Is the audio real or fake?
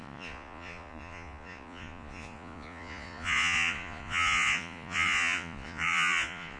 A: fake